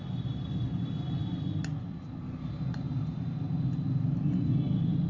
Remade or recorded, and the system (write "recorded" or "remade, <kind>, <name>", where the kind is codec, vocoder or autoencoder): recorded